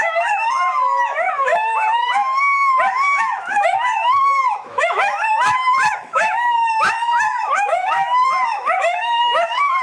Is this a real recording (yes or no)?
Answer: no